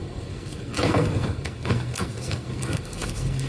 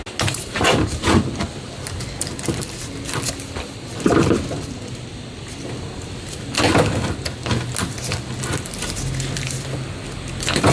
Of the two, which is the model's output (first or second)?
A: first